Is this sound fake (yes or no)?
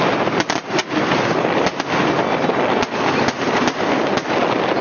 no